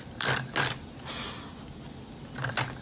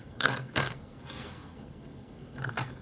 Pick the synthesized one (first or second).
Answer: second